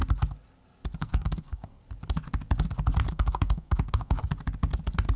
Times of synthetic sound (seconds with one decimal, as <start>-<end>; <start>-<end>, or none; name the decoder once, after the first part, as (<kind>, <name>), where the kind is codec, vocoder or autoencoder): 1.0-1.8 (codec, SNAC); 3.1-4.2